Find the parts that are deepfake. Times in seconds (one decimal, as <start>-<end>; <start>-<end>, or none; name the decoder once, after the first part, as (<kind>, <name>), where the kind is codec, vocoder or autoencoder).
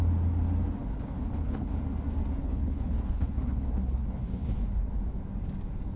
0.8-1.8 (codec, HILCodec); 2.4-4.9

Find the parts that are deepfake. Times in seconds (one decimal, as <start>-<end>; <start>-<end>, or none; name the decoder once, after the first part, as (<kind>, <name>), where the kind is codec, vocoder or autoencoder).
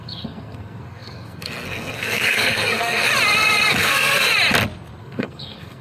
0.0-3.1 (codec, SNAC); 3.7-4.3; 5.0-5.8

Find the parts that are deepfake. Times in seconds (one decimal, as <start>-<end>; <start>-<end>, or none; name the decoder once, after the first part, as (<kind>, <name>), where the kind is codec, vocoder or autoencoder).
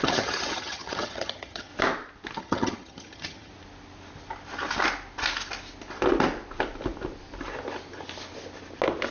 0.0-1.7 (vocoder, HiFi-GAN); 2.4-3.5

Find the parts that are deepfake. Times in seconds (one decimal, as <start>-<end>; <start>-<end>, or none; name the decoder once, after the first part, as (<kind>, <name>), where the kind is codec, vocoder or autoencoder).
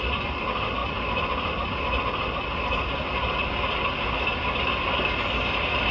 none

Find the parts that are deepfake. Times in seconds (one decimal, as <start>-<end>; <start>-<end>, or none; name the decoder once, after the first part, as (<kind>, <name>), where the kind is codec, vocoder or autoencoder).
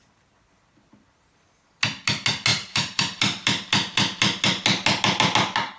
2.5-3.0 (vocoder, BigVGAN v2)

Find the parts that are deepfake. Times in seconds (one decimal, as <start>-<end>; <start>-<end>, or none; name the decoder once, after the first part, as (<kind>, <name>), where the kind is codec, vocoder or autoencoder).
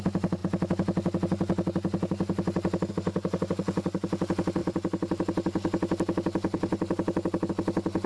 4.6-7.5 (vocoder, BigVGAN v2)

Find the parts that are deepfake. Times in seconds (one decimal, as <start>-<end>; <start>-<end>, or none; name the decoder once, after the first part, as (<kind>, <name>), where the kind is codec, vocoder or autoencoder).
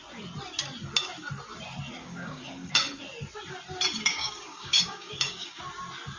2.0-2.7 (codec, DAC); 4.1-5.6